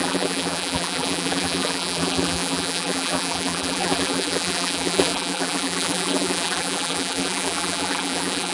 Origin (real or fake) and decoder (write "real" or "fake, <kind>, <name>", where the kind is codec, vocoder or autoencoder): fake, vocoder, BigVGAN v2